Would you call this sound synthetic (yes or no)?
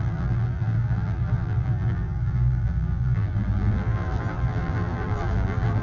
yes